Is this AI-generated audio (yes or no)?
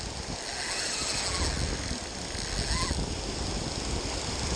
no